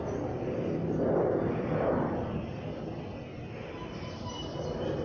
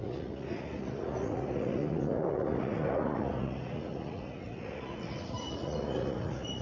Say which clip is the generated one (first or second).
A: second